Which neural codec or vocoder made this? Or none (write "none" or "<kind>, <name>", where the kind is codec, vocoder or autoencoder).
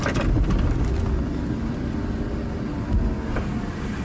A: none